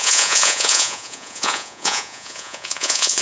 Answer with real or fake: fake